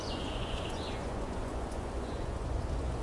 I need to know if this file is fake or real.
fake